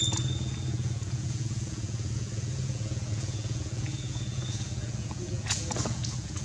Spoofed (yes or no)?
yes